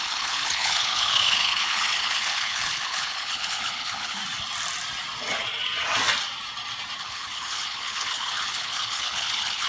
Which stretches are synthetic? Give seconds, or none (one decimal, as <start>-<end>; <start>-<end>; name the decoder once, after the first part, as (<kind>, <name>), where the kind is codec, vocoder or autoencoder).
0.0-4.2 (codec, HILCodec); 7.0-9.7

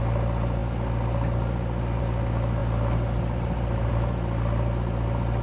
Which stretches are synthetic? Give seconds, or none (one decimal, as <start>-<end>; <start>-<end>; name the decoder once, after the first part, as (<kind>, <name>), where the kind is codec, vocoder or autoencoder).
none

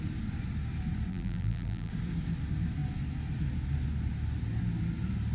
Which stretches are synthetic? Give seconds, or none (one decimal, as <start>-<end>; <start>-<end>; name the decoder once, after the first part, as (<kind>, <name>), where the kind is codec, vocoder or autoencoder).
1.1-1.9 (vocoder, BigVGAN v2)